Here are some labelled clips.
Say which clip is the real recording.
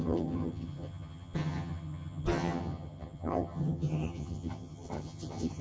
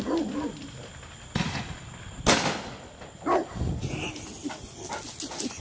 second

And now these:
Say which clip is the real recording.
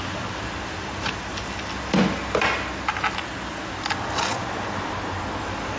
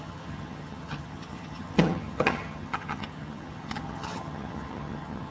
first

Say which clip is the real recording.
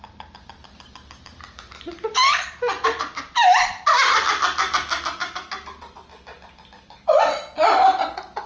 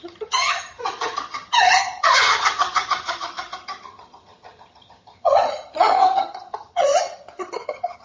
first